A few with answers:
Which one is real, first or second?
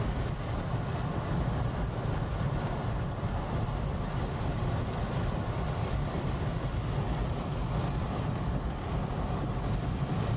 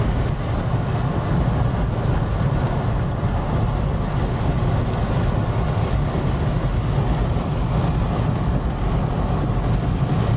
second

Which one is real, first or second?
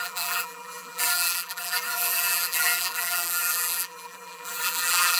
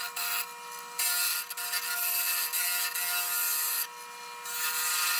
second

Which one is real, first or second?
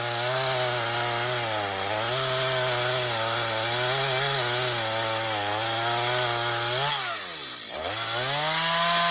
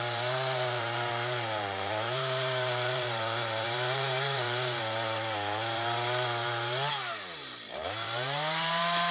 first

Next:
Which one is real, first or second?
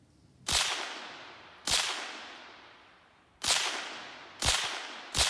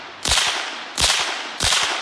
first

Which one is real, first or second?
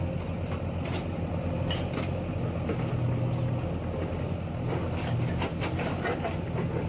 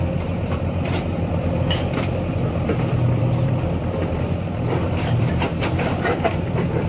first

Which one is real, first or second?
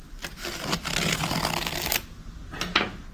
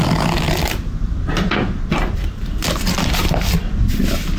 first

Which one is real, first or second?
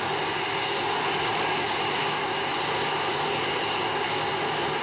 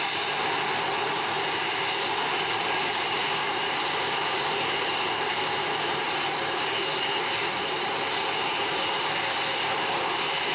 first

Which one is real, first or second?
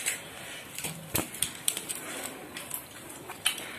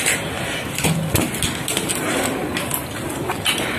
second